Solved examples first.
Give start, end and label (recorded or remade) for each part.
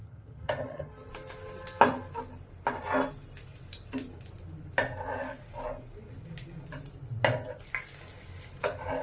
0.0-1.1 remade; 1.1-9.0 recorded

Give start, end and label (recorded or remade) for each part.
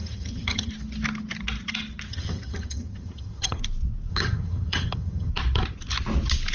0.0-0.7 remade; 0.7-2.1 recorded; 2.1-3.6 remade; 3.6-4.1 recorded; 4.1-5.3 remade; 5.3-6.5 recorded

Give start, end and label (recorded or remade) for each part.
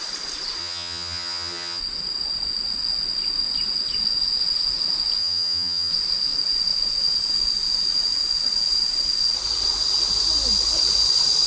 0.0-0.6 recorded; 0.6-1.8 remade; 1.8-5.2 recorded; 5.2-5.9 remade; 5.9-11.5 recorded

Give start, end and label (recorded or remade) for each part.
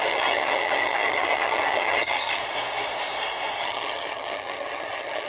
0.0-2.4 remade; 2.4-3.6 recorded; 3.6-5.3 remade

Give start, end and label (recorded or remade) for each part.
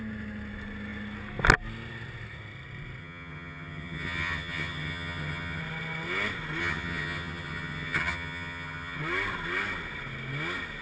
0.0-3.0 recorded; 3.0-5.6 remade; 5.6-6.6 recorded; 6.6-9.0 remade; 9.0-10.8 recorded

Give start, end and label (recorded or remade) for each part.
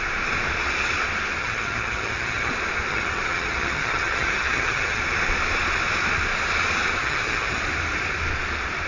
0.0-1.4 recorded; 1.4-2.5 remade; 2.5-2.9 recorded; 2.9-5.0 remade; 5.0-7.0 recorded; 7.0-7.6 remade; 7.6-8.9 recorded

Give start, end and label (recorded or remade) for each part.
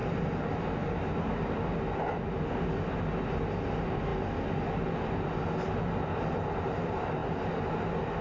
0.0-8.2 recorded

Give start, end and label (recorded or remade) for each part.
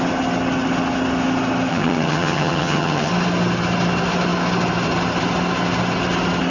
0.0-1.7 recorded; 1.7-3.1 remade; 3.1-6.5 recorded